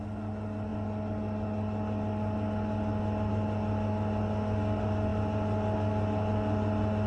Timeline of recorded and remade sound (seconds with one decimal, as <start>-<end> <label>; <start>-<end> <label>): 0.0-7.1 recorded